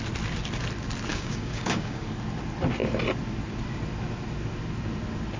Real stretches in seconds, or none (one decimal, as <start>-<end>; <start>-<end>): 0.0-1.1; 2.0-5.4